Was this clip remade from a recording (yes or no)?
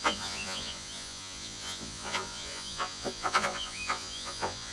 yes